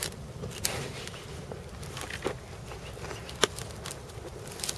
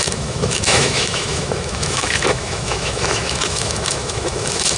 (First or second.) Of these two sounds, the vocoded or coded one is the second